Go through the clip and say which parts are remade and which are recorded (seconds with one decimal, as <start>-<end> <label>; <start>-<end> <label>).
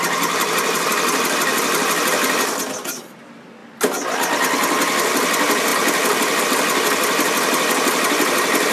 0.0-8.7 recorded